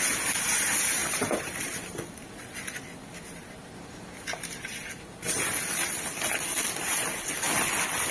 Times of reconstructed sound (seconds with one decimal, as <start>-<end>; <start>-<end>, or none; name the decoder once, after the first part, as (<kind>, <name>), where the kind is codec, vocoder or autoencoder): 1.0-1.7 (vocoder, BigVGAN v2)